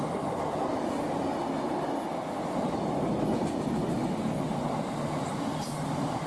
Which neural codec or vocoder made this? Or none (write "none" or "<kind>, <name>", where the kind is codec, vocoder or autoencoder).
none